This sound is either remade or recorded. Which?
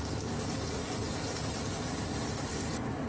recorded